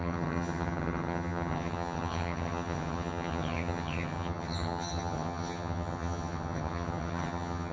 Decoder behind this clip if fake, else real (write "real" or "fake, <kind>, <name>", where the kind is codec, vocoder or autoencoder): fake, vocoder, HiFi-GAN